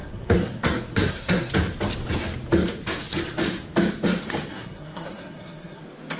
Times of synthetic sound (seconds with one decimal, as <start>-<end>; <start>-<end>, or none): 0.0-1.5; 4.5-5.8